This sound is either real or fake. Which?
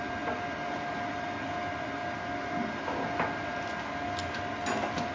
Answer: real